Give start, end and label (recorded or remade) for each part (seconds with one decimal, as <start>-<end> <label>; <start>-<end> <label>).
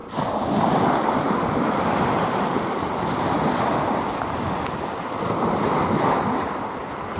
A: 0.0-7.2 recorded